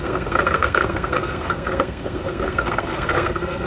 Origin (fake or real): fake